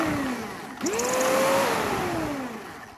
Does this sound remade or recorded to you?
recorded